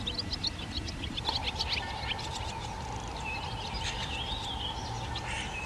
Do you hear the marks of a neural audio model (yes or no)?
no